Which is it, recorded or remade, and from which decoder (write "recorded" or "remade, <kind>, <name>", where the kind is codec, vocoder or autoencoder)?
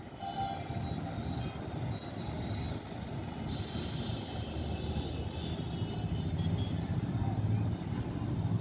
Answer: recorded